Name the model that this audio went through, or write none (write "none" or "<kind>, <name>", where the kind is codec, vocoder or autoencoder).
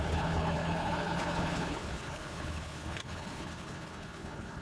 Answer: codec, HILCodec